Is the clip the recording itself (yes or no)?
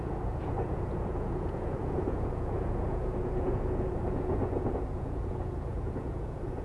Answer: no